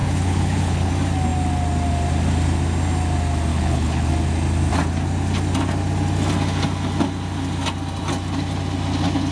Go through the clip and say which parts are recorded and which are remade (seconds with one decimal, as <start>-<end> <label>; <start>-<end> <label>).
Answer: 0.0-0.9 remade; 0.9-3.5 recorded; 3.5-4.1 remade; 4.1-9.3 recorded